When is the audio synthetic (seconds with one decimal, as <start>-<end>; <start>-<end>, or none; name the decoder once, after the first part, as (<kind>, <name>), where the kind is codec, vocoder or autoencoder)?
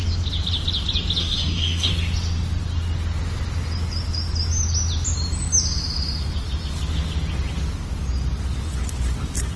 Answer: 1.2-1.9 (codec, SNAC)